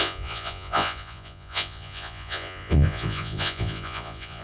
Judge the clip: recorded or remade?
remade